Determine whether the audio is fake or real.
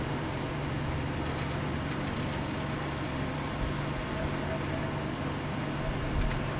real